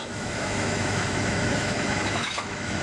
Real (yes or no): no